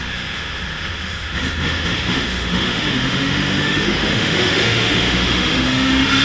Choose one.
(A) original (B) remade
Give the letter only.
B